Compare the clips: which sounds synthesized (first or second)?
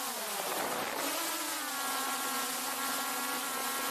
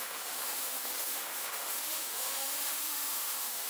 second